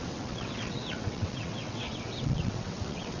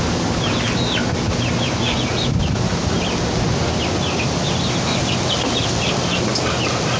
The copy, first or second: first